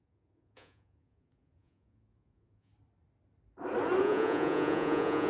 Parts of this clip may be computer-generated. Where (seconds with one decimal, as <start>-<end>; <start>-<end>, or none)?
0.0-2.7; 4.0-5.3